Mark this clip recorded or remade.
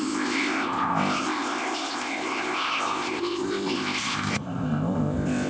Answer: remade